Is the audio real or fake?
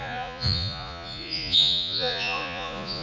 fake